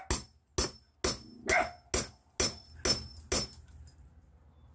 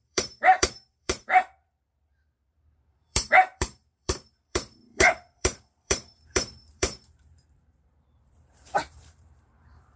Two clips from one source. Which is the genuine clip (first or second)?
first